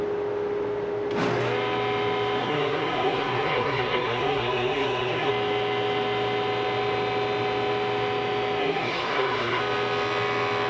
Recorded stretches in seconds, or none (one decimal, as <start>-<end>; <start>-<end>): 0.0-2.4; 5.3-8.6; 9.6-10.7